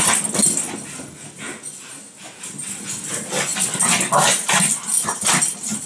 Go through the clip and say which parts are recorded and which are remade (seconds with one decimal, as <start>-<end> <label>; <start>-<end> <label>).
0.0-5.9 recorded